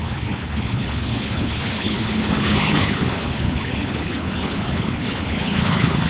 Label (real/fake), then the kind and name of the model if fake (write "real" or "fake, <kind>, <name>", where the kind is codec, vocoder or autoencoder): fake, codec, HILCodec